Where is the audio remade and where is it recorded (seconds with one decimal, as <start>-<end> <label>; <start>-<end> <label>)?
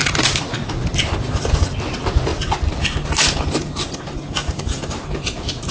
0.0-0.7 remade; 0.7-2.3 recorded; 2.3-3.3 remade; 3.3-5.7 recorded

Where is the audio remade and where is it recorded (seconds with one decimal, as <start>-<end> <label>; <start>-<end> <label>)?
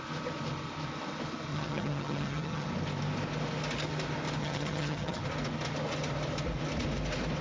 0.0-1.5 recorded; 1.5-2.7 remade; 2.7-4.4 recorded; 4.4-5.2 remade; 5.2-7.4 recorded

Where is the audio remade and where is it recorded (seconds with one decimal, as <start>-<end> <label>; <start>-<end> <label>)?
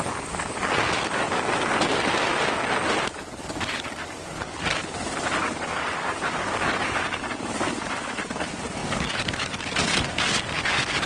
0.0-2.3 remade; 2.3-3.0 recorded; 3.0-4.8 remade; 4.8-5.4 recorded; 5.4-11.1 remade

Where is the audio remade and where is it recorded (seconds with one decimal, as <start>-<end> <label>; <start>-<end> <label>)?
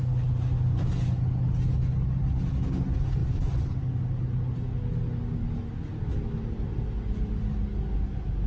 0.0-8.5 recorded